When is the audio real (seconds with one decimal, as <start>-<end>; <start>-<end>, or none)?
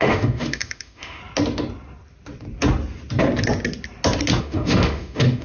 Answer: 1.2-4.4